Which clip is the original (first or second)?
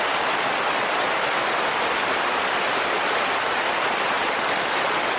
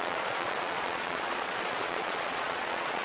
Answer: first